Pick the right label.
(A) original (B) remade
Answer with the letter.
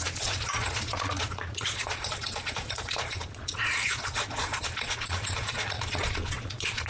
B